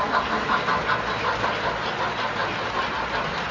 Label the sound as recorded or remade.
recorded